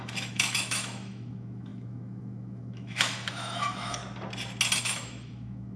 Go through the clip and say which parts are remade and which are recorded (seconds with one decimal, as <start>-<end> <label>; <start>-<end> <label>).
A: 0.0-4.0 remade; 4.0-4.8 recorded; 4.8-5.8 remade